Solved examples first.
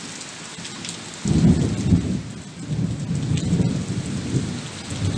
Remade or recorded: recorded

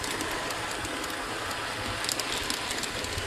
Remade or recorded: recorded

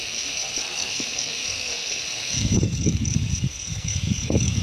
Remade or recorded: remade